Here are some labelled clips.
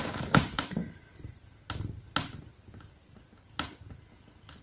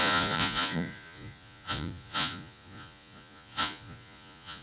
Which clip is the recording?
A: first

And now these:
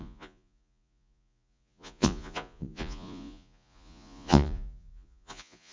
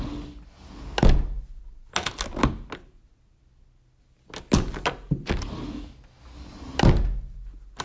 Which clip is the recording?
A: second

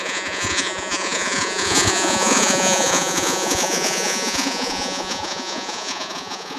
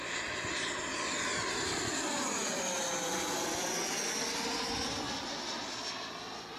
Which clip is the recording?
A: second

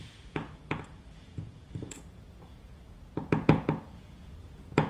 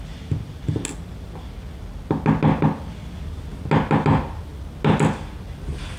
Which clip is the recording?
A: second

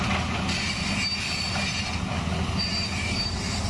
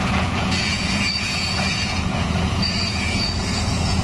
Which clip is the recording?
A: first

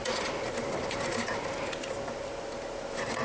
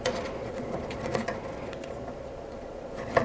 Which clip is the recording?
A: first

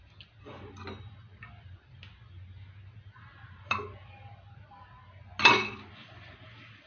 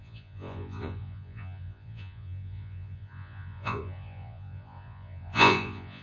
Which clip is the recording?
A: first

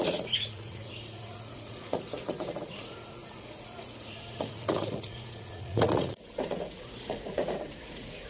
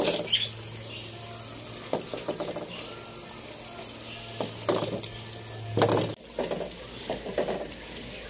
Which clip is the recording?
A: second